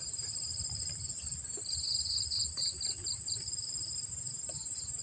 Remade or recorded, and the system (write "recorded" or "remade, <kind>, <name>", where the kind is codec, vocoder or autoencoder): recorded